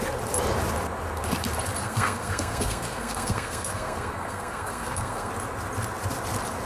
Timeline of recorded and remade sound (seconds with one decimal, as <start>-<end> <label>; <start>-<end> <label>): 0.0-1.8 recorded; 1.8-5.3 remade; 5.3-6.7 recorded